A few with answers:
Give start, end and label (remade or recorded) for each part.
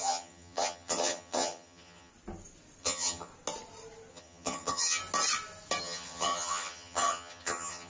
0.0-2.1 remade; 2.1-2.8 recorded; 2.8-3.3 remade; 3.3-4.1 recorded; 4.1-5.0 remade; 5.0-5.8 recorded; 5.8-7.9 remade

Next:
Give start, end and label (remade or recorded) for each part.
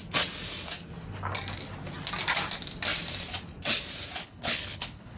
0.0-4.2 recorded; 4.2-5.2 remade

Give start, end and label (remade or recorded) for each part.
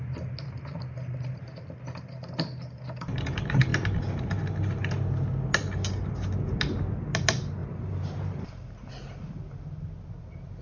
0.0-10.6 recorded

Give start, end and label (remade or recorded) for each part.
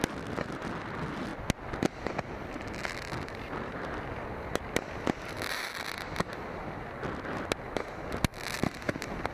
0.0-9.3 recorded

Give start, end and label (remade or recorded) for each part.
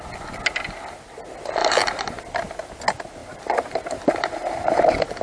0.0-1.6 recorded; 1.6-2.2 remade; 2.2-3.2 recorded; 3.2-4.8 remade; 4.8-5.2 recorded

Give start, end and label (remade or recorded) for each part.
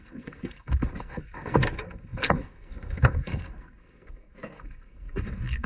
0.0-5.7 remade